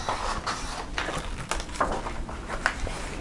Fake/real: real